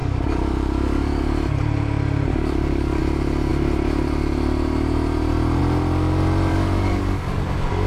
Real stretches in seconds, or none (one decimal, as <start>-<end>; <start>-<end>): 1.2-2.3; 3.0-6.5